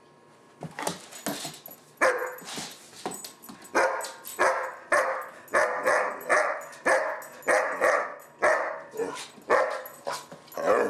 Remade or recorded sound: recorded